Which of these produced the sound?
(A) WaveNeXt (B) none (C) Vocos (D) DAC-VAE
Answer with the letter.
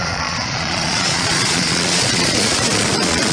C